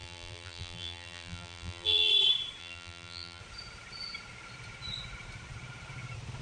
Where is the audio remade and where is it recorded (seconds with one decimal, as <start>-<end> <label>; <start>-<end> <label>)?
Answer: 0.0-2.1 remade; 2.1-2.6 recorded; 2.6-3.4 remade; 3.4-6.4 recorded